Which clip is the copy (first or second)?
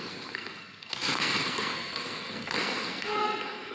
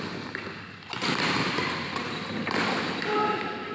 first